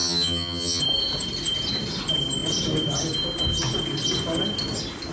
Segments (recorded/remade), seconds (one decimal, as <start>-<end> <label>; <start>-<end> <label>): 0.0-0.8 remade; 0.8-5.1 recorded